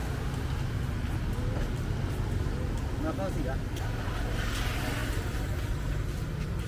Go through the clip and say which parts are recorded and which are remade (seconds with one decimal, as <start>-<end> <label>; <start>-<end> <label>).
0.0-6.7 recorded